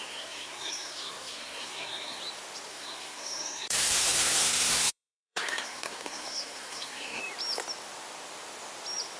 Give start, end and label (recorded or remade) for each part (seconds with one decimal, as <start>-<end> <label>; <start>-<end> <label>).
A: 0.0-2.2 remade; 2.2-2.7 recorded; 2.7-7.2 remade; 7.2-9.2 recorded